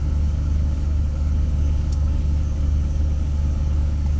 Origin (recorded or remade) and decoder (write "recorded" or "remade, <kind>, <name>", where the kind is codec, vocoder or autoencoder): remade, codec, DAC